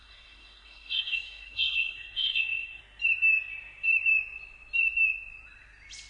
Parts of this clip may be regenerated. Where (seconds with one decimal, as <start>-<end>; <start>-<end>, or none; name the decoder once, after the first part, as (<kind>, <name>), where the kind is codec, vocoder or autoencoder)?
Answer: 0.0-2.8 (codec, SNAC)